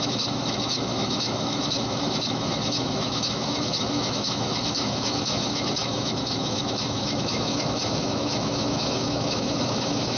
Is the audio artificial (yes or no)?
yes